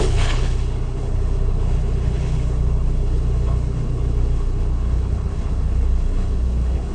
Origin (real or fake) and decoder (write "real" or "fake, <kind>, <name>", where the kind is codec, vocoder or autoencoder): fake, codec, HILCodec